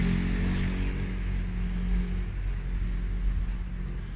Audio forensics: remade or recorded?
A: recorded